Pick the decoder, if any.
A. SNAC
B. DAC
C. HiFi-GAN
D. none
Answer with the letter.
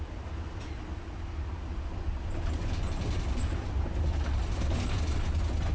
D